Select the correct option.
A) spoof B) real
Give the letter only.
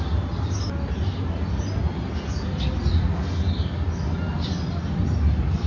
B